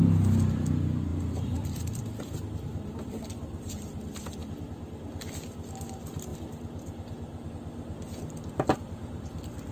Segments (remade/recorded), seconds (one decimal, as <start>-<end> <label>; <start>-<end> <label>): 0.0-1.1 recorded; 1.1-3.7 remade; 3.7-6.3 recorded; 6.3-7.5 remade; 7.5-9.7 recorded